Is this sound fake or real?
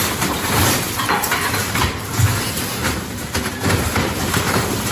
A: fake